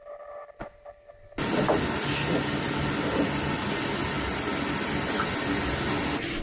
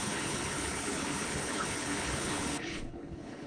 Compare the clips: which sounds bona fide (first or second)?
first